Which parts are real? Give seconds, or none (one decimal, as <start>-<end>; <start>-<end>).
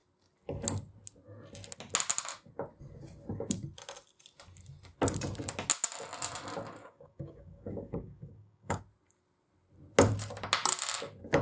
0.0-6.8; 8.8-11.4